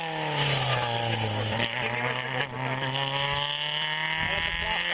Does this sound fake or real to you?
real